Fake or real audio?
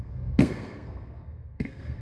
fake